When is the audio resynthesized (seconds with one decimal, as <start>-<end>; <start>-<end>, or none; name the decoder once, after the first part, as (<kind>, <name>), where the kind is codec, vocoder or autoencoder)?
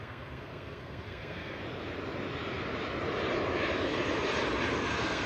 0.0-1.6 (codec, SNAC); 4.8-5.3